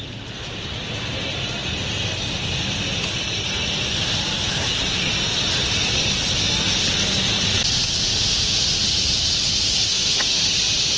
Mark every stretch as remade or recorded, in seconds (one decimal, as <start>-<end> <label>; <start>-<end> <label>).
0.0-4.4 recorded; 4.4-5.1 remade; 5.1-9.9 recorded; 9.9-10.4 remade; 10.4-11.0 recorded